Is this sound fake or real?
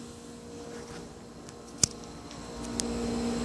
real